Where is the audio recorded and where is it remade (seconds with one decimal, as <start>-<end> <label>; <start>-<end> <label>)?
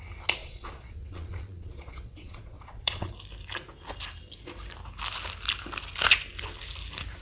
0.0-0.4 recorded; 0.4-3.1 remade; 3.1-7.2 recorded